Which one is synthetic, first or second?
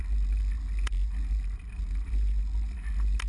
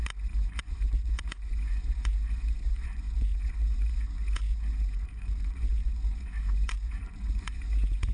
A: second